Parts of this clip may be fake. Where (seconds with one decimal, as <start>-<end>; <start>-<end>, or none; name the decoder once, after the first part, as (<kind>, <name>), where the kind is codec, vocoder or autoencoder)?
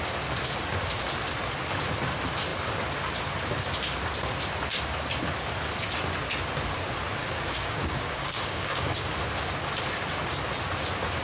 7.2-9.1 (codec, DAC)